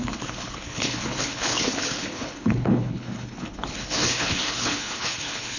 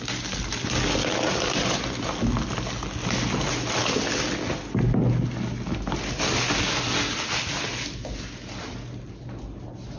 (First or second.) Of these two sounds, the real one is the second